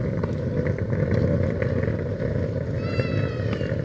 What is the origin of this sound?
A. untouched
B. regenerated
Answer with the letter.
A